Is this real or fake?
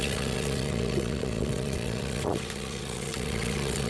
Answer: fake